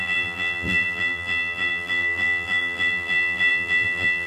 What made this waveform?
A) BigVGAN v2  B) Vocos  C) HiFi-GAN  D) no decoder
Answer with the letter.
A